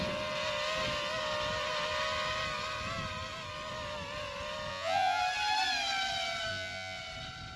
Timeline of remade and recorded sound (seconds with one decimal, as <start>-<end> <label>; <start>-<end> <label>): 0.0-4.7 recorded; 4.7-5.2 remade; 5.2-6.5 recorded; 6.5-7.0 remade; 7.0-7.6 recorded